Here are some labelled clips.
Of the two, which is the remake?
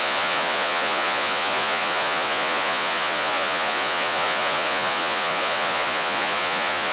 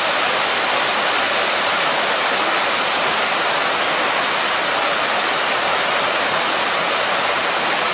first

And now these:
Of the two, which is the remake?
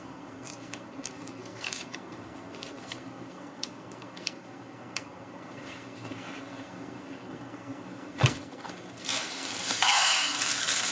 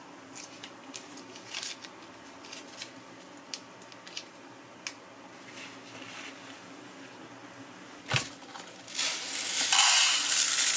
first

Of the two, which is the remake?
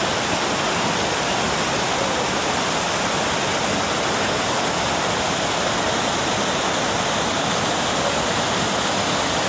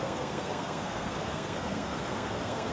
second